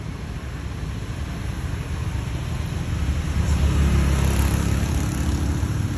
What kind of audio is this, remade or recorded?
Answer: recorded